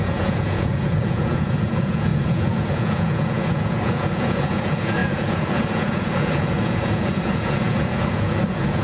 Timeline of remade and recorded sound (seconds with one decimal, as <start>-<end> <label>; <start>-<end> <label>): 0.0-8.8 remade